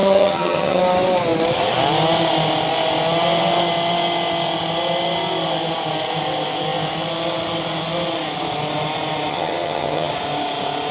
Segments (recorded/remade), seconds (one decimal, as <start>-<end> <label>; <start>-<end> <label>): 0.0-0.8 remade; 0.8-9.3 recorded; 9.3-10.1 remade; 10.1-10.9 recorded